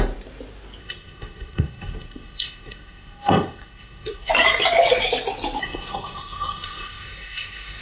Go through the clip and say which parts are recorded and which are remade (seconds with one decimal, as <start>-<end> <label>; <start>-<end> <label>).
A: 0.0-0.8 recorded; 0.8-4.3 remade; 4.3-5.6 recorded; 5.6-7.8 remade